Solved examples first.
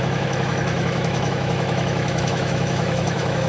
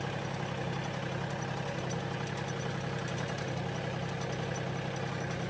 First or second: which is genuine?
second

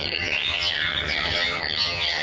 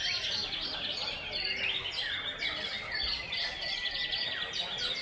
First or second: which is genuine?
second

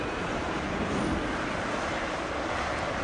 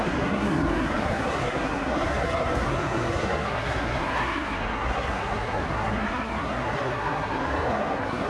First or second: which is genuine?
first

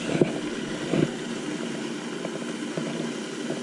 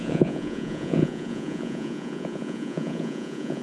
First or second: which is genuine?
first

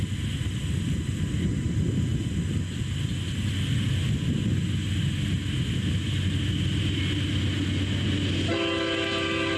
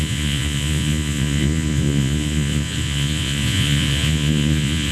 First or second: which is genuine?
first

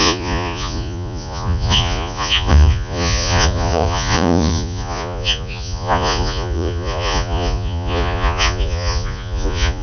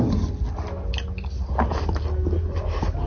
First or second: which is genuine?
second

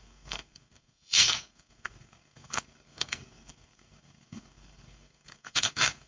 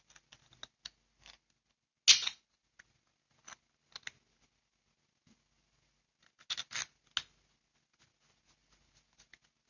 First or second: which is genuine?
second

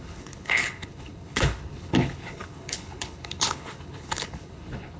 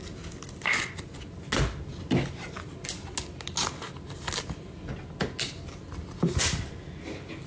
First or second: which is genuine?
second